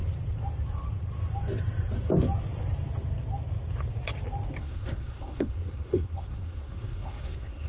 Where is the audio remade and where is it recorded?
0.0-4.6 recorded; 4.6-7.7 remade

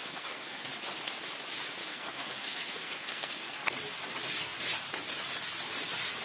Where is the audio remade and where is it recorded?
0.0-0.7 remade; 0.7-1.8 recorded; 1.8-3.7 remade; 3.7-6.2 recorded

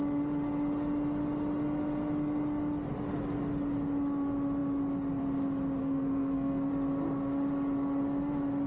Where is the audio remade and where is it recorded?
0.0-5.8 recorded; 5.8-6.7 remade; 6.7-8.7 recorded